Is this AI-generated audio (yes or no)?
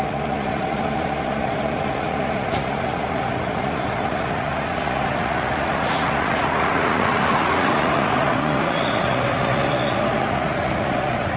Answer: yes